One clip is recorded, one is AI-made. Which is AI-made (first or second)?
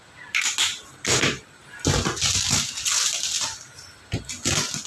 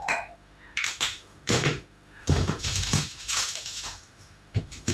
second